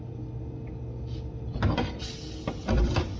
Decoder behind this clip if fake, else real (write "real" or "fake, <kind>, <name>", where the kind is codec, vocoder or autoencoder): real